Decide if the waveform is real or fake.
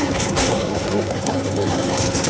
fake